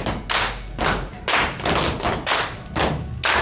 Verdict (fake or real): real